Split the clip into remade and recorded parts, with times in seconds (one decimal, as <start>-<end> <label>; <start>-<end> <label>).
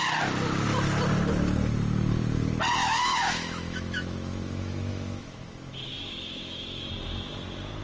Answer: 0.0-2.8 recorded; 2.8-6.9 remade; 6.9-7.8 recorded